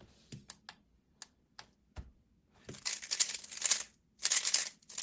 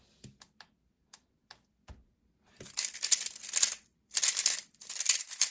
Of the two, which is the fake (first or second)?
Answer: first